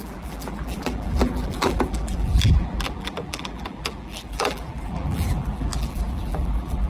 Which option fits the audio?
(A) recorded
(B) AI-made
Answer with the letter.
B